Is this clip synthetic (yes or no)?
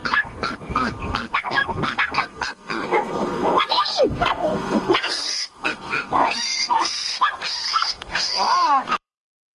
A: yes